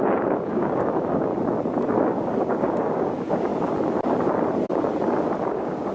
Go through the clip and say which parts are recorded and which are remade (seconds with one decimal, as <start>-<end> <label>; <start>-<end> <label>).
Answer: 0.0-1.3 remade; 1.3-2.0 recorded; 2.0-3.5 remade; 3.5-5.5 recorded; 5.5-5.9 remade